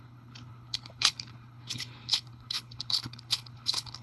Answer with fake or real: fake